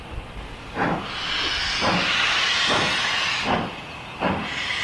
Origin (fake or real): real